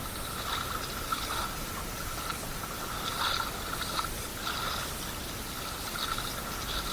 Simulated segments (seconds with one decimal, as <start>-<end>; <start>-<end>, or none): 0.0-3.3; 4.3-4.9